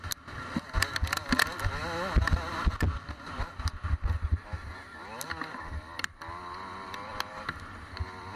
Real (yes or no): yes